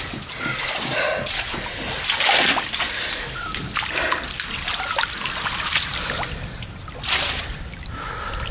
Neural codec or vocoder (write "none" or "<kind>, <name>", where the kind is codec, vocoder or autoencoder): none